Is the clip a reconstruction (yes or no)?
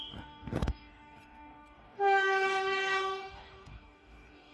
yes